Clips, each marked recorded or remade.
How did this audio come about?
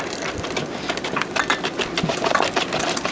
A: recorded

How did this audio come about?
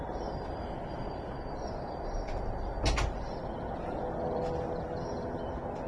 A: recorded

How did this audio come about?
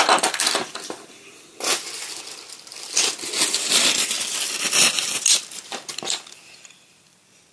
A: remade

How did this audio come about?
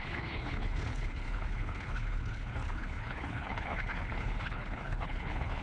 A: remade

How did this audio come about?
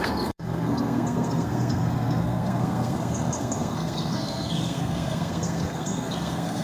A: remade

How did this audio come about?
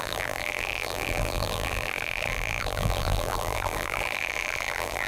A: remade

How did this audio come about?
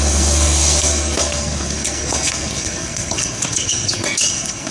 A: remade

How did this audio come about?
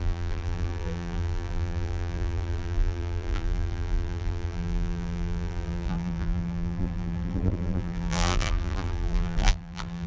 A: remade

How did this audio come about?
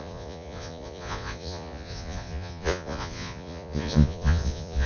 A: remade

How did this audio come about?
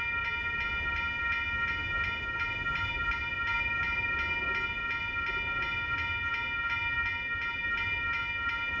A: recorded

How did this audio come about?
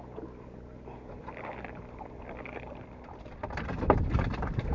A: recorded